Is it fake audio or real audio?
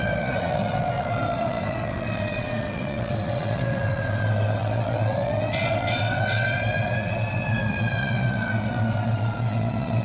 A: fake